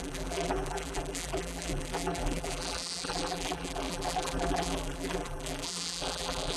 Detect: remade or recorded remade